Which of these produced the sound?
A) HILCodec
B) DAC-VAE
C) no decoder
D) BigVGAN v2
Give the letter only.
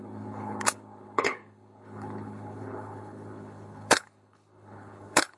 A